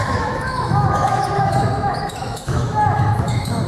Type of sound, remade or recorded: remade